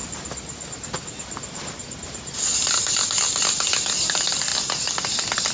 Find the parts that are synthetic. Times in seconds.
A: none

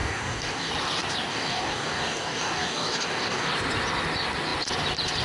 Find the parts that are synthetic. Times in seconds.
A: 0.0-0.7; 1.3-3.5